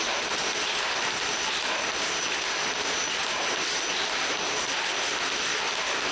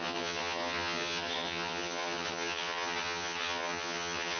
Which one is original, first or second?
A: first